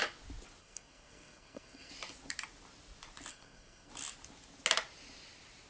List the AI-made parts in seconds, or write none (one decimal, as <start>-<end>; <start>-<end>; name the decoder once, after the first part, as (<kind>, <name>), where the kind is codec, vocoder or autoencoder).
0.6-1.9 (codec, SNAC); 3.3-3.9